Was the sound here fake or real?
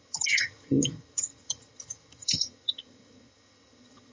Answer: fake